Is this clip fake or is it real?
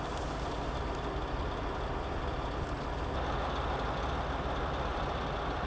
real